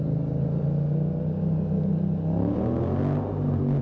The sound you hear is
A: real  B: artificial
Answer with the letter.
A